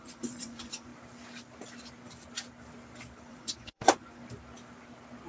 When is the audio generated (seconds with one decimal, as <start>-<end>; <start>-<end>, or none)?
0.0-0.9; 3.3-4.2